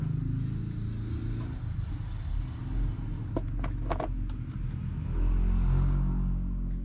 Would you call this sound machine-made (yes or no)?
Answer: no